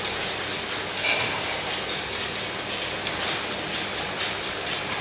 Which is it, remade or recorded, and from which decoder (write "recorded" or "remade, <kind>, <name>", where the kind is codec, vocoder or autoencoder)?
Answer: recorded